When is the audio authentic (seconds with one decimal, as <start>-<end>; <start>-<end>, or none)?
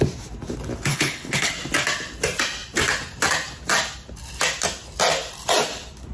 0.0-0.9; 1.5-6.1